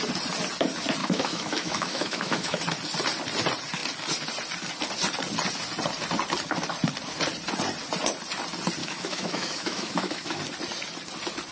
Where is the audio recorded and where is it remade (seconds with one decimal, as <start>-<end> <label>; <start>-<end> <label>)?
0.0-1.0 recorded; 1.0-2.6 remade; 2.6-8.8 recorded; 8.8-10.4 remade; 10.4-11.5 recorded